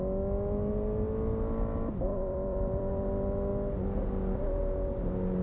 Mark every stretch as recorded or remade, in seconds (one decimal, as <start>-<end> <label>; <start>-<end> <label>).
0.0-2.1 recorded; 2.1-2.9 remade; 2.9-5.4 recorded